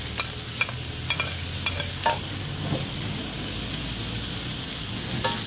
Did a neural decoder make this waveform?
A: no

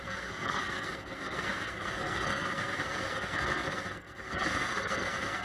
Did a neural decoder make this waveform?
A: yes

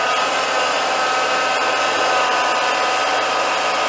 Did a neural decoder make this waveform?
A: no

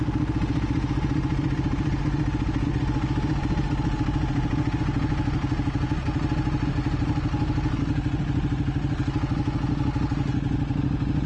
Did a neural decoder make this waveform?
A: no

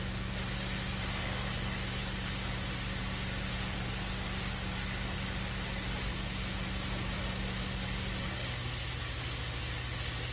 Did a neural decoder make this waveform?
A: no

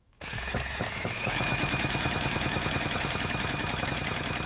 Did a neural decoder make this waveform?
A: yes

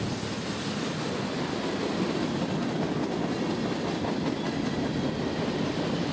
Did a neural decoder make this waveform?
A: no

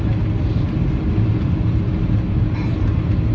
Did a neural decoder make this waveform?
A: no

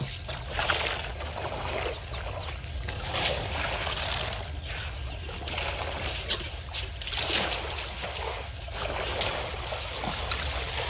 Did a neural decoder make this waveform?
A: no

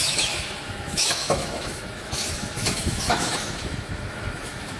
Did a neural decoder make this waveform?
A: yes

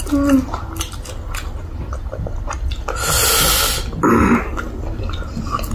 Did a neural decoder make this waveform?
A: no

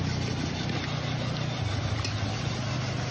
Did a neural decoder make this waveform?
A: no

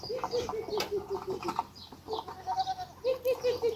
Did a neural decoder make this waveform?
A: no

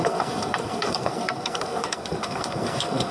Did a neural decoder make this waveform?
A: yes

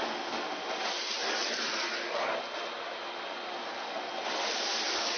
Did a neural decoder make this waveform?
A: no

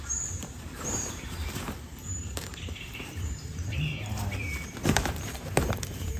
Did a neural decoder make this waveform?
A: yes